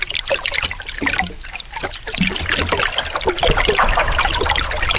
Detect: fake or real real